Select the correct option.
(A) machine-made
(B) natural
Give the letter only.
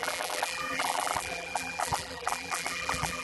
A